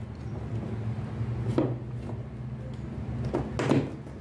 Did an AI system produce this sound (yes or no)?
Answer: no